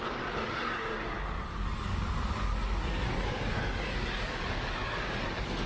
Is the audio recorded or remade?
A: remade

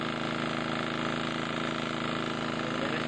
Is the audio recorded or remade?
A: recorded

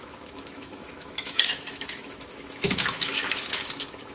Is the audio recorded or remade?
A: remade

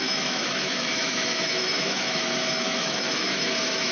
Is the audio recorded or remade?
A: remade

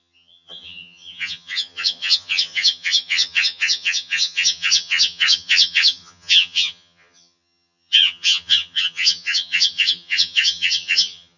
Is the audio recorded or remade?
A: remade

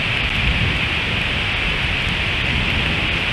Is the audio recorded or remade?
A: recorded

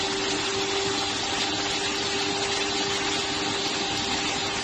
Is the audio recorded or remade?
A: recorded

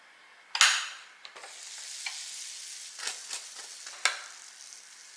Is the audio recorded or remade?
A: recorded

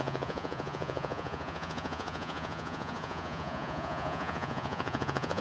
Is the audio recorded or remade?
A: remade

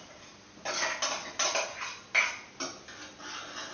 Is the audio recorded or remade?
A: recorded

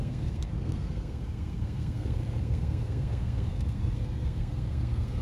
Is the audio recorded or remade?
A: remade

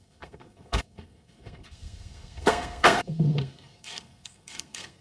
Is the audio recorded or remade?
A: remade